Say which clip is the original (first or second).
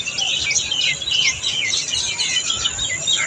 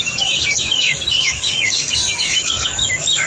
first